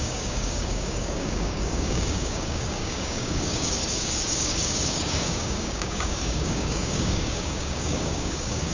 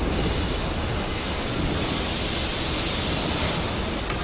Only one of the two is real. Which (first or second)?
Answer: second